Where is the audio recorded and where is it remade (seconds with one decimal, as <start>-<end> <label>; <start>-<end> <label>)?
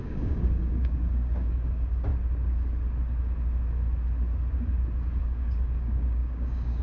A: 0.0-2.1 remade; 2.1-5.2 recorded; 5.2-6.8 remade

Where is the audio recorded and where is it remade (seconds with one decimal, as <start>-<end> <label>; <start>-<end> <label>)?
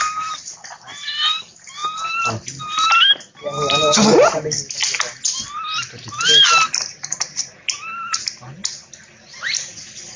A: 0.0-10.2 recorded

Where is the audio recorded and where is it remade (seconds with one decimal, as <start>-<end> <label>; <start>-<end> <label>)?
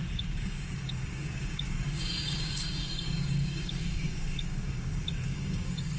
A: 0.0-6.0 remade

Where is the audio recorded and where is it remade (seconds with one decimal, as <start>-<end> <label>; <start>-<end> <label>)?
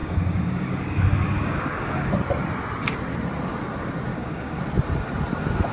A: 0.0-2.1 remade; 2.1-4.1 recorded; 4.1-4.6 remade; 4.6-5.7 recorded